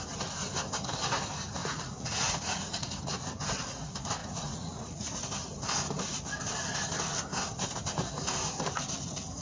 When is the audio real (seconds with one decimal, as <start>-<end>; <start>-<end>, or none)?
0.0-1.6; 2.9-4.2; 5.2-9.4